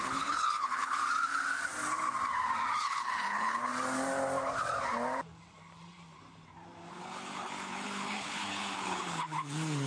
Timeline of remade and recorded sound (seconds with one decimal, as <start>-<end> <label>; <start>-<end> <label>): 0.0-1.0 remade; 1.0-2.8 recorded; 2.8-3.7 remade; 3.7-6.9 recorded; 6.9-9.9 remade